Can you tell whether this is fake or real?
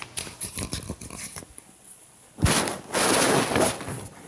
real